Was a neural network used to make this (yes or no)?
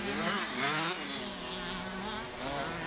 no